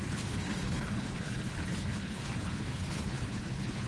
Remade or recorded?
remade